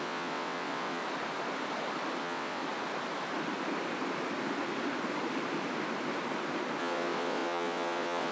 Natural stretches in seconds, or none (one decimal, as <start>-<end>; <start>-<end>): 1.0-2.2; 2.6-6.8